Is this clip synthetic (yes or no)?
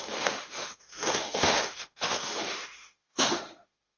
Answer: yes